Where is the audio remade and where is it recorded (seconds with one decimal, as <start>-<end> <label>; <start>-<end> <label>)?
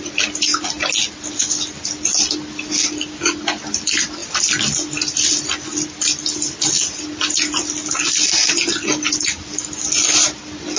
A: 0.0-0.5 remade; 0.5-1.1 recorded; 1.1-10.8 remade